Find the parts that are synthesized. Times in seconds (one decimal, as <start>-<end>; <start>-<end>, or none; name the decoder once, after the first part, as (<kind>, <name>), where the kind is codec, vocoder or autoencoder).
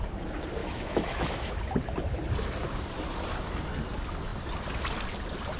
0.6-1.5 (autoencoder, DAC-VAE)